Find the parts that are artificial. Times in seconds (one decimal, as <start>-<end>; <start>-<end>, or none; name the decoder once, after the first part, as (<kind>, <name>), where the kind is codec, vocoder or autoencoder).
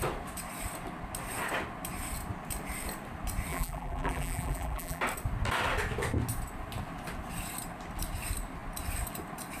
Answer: 3.5-5.0 (vocoder, BigVGAN v2)